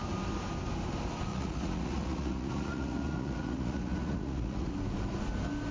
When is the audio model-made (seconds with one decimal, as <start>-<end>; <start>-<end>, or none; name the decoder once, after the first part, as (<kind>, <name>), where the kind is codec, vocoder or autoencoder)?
1.3-4.7 (vocoder, Vocos)